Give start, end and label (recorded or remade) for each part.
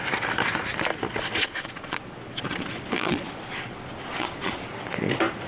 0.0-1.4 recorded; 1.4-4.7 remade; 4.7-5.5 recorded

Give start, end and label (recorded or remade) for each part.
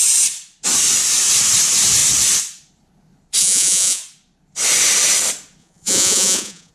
0.0-3.4 recorded; 3.4-4.0 remade; 4.0-5.6 recorded; 5.6-6.7 remade